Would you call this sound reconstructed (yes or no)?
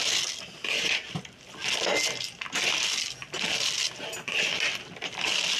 no